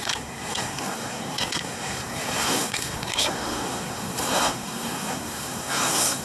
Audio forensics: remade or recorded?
remade